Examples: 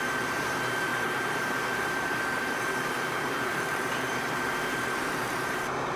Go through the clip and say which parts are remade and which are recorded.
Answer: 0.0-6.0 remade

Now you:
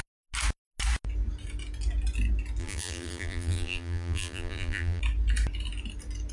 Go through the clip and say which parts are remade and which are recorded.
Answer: 0.0-2.6 recorded; 2.6-5.0 remade; 5.0-6.3 recorded